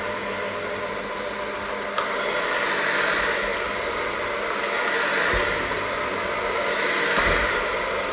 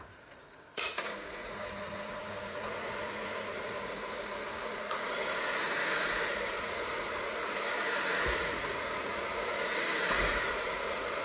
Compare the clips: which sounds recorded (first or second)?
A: first